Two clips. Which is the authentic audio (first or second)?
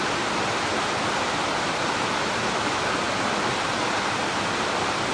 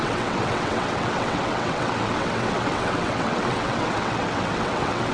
first